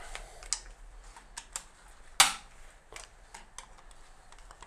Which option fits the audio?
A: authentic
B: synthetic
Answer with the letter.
A